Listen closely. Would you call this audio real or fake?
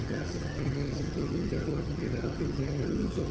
fake